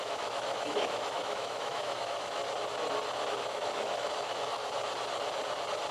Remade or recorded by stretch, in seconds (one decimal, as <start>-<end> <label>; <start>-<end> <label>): 0.0-2.4 remade; 2.4-3.3 recorded; 3.3-4.6 remade; 4.6-5.9 recorded